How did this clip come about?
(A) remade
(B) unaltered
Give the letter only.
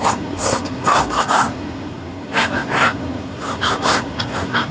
A